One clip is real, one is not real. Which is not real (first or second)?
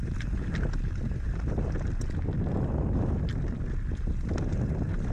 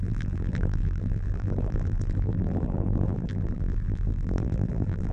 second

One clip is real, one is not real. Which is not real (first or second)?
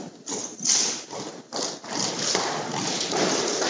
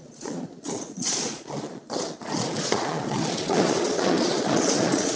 second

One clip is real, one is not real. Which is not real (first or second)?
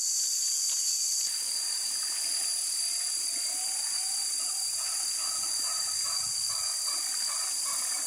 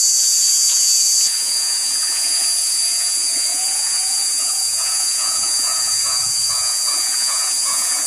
second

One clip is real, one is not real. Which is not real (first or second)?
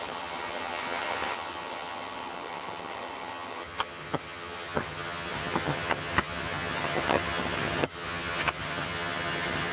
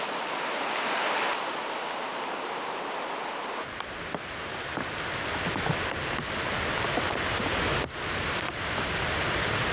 first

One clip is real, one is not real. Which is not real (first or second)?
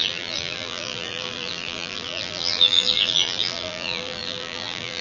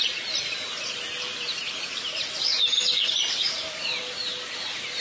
first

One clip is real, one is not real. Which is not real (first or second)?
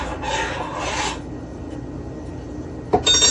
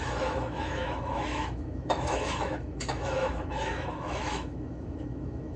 second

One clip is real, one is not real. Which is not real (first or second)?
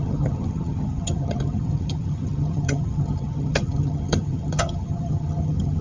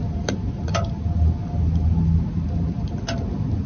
first